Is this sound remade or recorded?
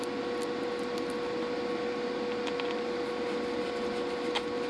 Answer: recorded